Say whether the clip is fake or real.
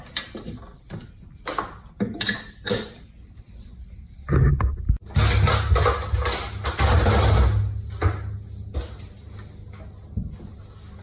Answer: real